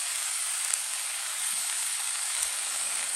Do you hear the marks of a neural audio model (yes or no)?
yes